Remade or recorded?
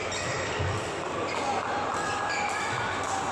recorded